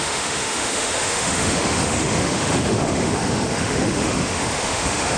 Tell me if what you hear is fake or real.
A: fake